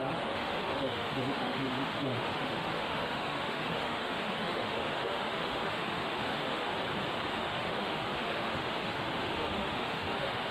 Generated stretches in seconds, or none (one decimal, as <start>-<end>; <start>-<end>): 0.0-6.7; 7.3-10.5